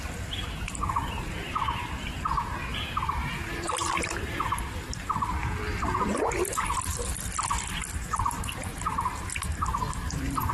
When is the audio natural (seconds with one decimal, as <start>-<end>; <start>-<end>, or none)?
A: 0.0-2.7; 4.6-9.5